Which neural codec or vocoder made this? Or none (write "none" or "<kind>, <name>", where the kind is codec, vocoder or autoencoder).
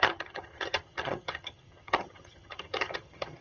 vocoder, HiFi-GAN